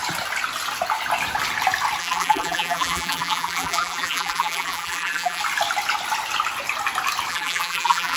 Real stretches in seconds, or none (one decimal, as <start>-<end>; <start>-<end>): 0.0-2.0; 5.4-7.3